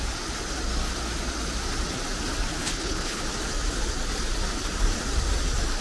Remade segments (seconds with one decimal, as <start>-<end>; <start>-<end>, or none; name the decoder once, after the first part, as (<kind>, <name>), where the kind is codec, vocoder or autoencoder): 2.6-3.2 (codec, HILCodec)